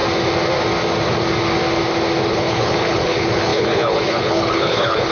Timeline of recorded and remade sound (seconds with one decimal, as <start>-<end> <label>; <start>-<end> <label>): 0.0-2.3 recorded; 2.3-5.1 remade